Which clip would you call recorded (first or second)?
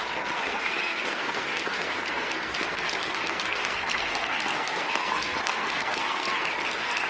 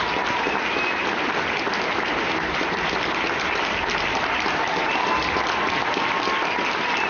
second